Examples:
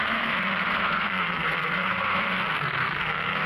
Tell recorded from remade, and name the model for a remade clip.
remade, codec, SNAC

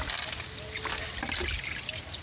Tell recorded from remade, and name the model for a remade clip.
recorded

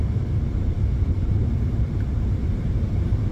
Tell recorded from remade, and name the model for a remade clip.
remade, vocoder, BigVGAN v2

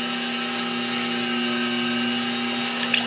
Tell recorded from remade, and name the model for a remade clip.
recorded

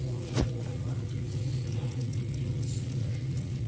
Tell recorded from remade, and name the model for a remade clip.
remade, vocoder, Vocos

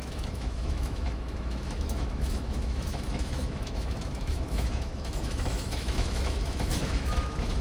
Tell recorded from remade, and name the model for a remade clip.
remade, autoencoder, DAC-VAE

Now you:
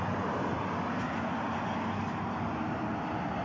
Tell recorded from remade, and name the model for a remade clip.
recorded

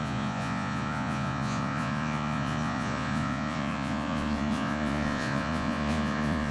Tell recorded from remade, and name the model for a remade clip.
remade, vocoder, Vocos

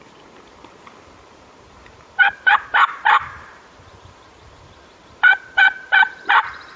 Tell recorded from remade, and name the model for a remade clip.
remade, vocoder, BigVGAN v2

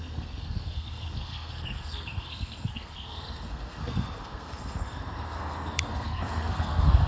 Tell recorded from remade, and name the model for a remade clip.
remade, codec, SNAC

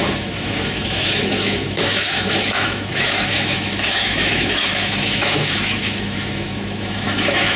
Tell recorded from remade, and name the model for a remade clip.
remade, autoencoder, DAC-VAE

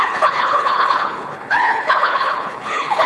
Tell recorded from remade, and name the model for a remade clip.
remade, codec, HILCodec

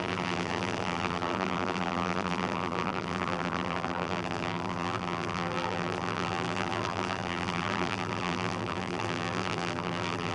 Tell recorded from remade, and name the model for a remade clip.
remade, vocoder, BigVGAN v2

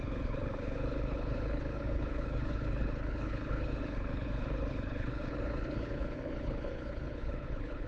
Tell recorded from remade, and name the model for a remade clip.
remade, codec, HILCodec